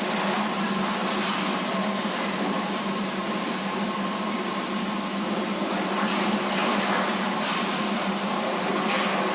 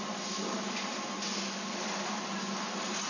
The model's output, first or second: first